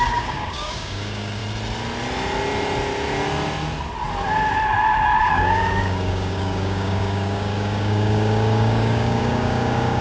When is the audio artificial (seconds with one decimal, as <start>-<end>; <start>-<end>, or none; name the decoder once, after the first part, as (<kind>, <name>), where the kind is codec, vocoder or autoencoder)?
0.0-1.4 (codec, DAC); 5.2-10.0